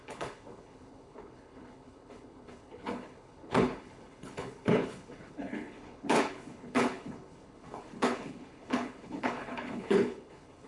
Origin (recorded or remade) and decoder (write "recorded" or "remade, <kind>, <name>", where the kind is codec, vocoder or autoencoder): remade, codec, HILCodec